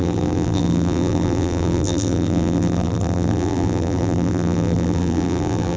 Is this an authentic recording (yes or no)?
no